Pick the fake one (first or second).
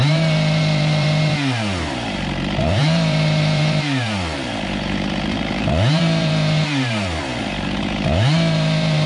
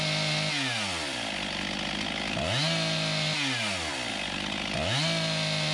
first